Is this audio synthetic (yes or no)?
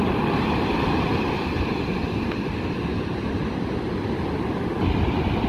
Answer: no